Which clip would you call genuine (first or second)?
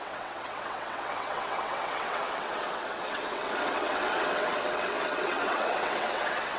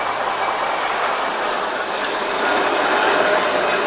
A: second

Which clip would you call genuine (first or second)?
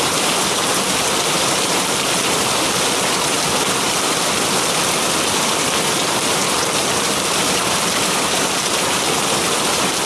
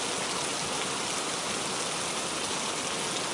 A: second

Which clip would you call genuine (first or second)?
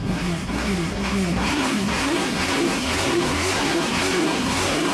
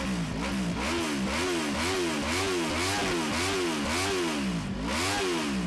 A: second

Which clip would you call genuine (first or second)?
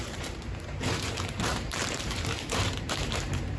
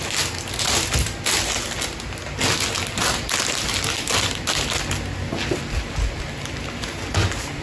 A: second